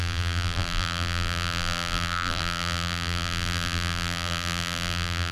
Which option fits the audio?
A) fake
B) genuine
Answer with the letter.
A